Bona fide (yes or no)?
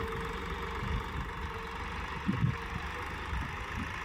yes